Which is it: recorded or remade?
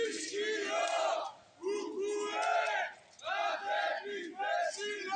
recorded